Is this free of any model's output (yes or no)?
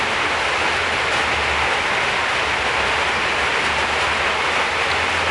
yes